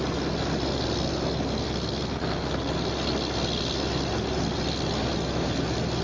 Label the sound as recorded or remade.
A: recorded